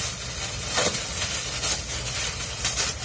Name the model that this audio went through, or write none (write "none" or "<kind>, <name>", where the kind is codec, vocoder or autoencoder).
none